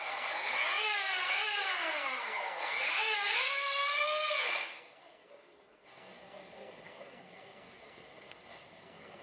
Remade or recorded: remade